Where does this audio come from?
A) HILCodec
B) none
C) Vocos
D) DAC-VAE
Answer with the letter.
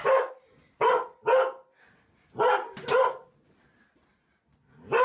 B